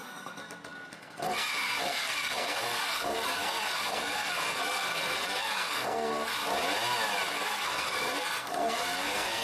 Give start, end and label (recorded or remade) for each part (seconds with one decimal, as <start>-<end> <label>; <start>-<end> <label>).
0.0-6.3 remade; 6.3-7.3 recorded; 7.3-9.4 remade